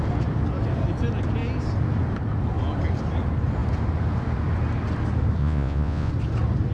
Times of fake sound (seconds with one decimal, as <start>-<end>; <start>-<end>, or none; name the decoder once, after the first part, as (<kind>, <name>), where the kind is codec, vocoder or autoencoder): 5.4-6.1 (vocoder, Vocos)